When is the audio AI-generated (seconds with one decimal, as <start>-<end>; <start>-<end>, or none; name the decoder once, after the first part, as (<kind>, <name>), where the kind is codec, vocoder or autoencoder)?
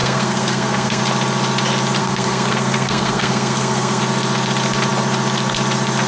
0.0-1.0 (codec, SNAC); 2.0-4.0